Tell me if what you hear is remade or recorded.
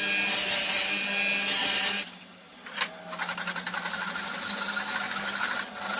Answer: recorded